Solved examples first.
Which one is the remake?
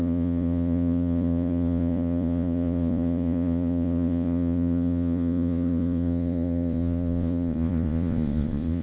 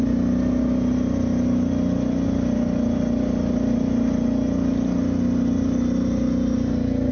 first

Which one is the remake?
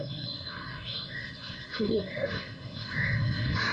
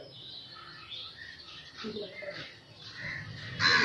first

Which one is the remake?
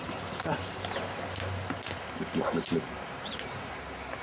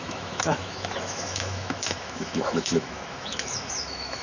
second